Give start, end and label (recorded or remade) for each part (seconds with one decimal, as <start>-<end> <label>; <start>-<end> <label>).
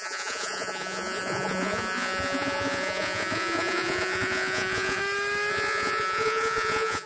0.0-5.0 remade; 5.0-5.5 recorded; 5.5-7.1 remade